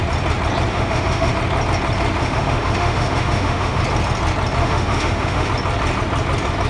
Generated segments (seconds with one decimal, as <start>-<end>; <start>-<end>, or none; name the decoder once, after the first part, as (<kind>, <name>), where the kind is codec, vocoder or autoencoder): 0.7-1.3 (autoencoder, DAC-VAE); 2.2-3.8; 4.6-5.5

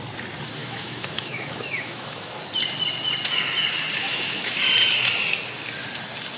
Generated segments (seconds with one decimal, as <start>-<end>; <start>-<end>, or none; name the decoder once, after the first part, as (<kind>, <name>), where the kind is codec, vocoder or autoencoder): 0.6-2.4 (autoencoder, DAC-VAE); 4.0-4.6